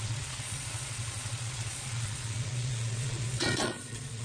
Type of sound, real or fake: fake